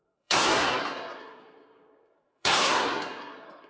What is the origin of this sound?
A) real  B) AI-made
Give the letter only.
B